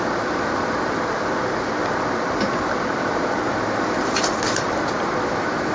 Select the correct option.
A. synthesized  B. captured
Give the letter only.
A